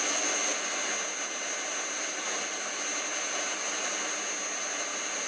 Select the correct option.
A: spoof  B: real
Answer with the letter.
B